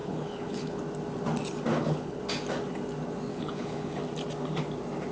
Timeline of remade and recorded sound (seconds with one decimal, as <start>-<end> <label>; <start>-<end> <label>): 0.0-0.8 remade; 0.8-1.7 recorded; 1.7-2.2 remade; 2.2-3.3 recorded; 3.3-4.0 remade; 4.0-5.1 recorded